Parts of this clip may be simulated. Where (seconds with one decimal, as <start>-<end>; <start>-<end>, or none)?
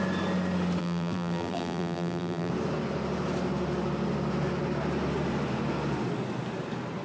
0.8-2.5